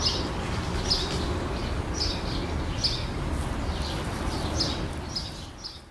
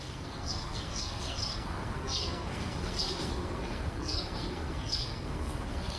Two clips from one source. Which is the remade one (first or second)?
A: second